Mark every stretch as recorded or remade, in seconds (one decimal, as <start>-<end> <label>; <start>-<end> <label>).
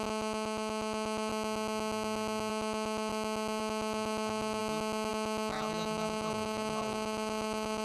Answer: 0.0-1.3 remade; 1.3-2.5 recorded; 2.5-3.1 remade; 3.1-3.6 recorded; 3.6-4.6 remade; 4.6-5.1 recorded; 5.1-7.8 remade